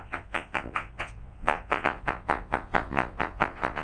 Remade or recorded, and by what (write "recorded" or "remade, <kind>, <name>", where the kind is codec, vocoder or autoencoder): remade, vocoder, Vocos